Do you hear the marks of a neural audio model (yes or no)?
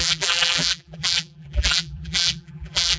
yes